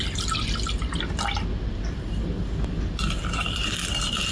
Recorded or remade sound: recorded